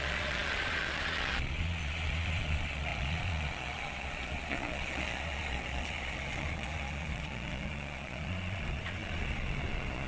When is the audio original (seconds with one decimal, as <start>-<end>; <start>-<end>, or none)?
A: none